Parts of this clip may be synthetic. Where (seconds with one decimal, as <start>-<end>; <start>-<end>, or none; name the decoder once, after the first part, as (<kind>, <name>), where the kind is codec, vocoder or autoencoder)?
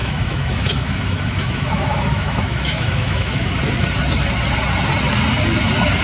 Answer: 0.0-3.6 (autoencoder, DAC-VAE)